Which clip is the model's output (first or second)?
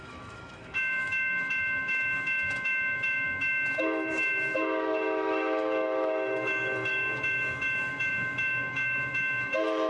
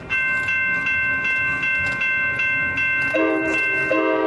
first